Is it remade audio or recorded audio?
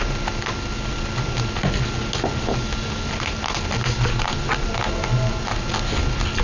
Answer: recorded